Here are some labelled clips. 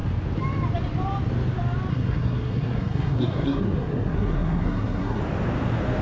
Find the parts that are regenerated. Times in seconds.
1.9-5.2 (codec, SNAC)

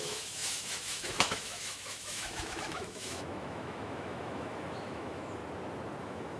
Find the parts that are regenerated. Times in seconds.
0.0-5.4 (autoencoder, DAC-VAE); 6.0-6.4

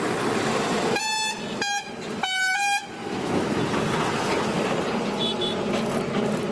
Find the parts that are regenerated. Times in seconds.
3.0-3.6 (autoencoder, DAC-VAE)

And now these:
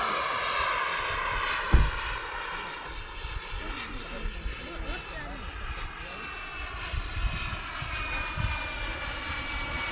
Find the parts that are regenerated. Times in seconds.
none

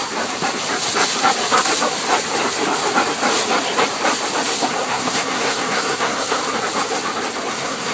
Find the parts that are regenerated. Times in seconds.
4.7-6.4 (codec, SNAC); 7.5-7.9

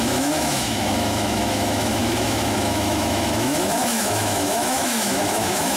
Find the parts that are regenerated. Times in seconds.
0.0-5.8 (autoencoder, DAC-VAE)

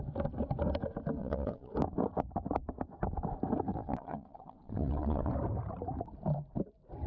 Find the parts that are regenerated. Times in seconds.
1.2-1.7 (vocoder, WaveNeXt); 3.7-5.3